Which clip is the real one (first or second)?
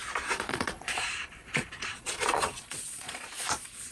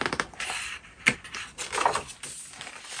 second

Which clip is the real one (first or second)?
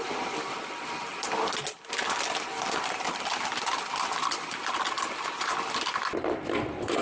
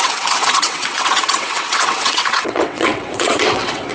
first